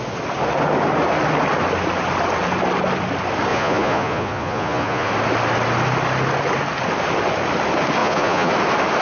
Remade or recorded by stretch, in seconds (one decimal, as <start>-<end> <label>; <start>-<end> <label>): 0.0-3.5 recorded; 3.5-5.1 remade; 5.1-8.0 recorded; 8.0-8.5 remade; 8.5-9.0 recorded